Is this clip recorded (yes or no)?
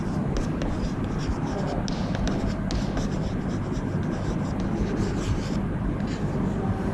yes